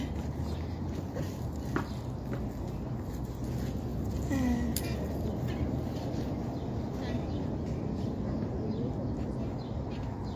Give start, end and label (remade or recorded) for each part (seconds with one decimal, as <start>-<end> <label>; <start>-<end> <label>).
0.0-10.4 recorded